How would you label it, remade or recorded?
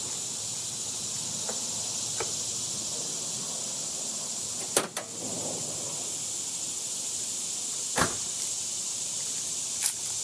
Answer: recorded